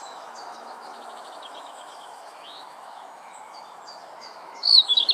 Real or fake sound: fake